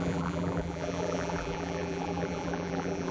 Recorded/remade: remade